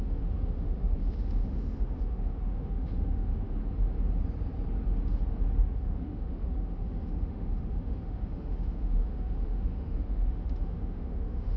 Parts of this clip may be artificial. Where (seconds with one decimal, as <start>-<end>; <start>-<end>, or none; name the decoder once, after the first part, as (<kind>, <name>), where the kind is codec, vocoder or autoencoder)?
0.0-3.6 (autoencoder, DAC-VAE); 5.6-11.6